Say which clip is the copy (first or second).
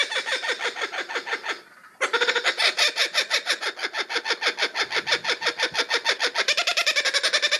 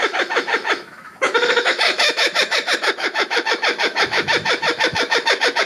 second